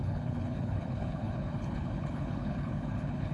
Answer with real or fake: fake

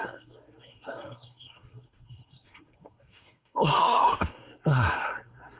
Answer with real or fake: fake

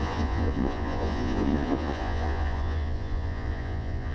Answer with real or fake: fake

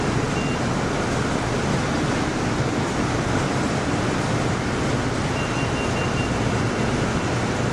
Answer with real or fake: real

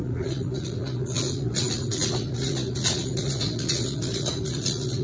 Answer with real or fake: fake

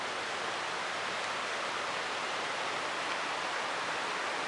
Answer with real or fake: real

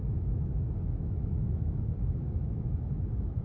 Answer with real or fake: fake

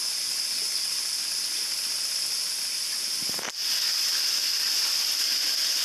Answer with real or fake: real